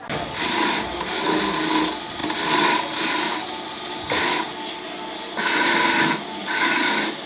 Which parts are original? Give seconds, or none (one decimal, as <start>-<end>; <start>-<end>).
0.0-6.4

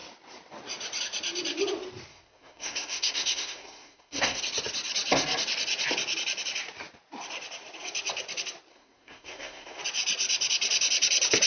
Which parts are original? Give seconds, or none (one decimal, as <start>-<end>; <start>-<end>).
0.0-2.1; 4.4-8.7; 9.8-11.5

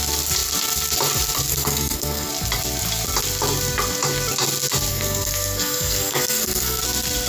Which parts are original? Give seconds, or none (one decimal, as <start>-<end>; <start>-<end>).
0.0-1.5; 2.3-4.9; 6.8-7.3

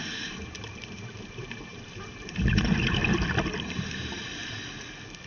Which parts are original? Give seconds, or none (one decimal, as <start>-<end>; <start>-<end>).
3.0-3.6; 4.1-5.3

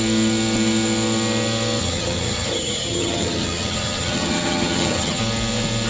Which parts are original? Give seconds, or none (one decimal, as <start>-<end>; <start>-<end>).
0.0-1.8; 5.2-5.9

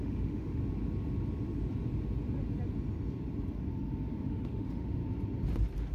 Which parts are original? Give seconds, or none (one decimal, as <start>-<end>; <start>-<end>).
0.6-4.1; 5.0-5.9